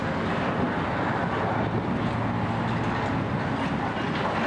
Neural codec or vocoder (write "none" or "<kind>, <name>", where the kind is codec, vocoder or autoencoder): none